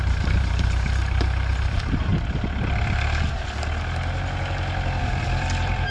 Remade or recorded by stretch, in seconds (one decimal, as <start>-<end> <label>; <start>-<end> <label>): 0.0-2.1 remade; 2.1-5.0 recorded; 5.0-5.9 remade